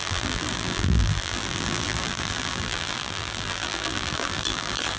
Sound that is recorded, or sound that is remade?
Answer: remade